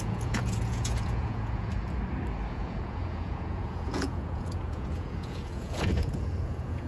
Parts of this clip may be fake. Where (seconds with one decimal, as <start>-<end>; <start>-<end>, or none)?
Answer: 0.0-1.7; 2.5-6.9

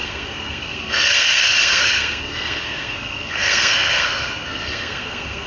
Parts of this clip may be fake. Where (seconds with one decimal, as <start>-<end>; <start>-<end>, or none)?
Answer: 0.0-5.5